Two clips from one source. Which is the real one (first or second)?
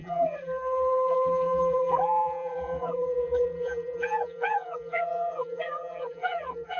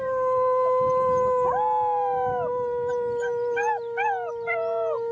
second